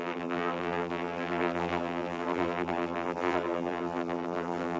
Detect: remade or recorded remade